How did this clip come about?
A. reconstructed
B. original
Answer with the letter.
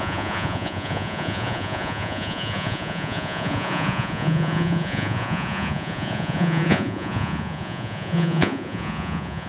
A